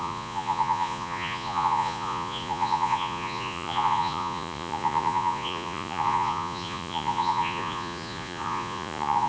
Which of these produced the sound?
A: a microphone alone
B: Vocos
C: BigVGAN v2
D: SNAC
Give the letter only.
B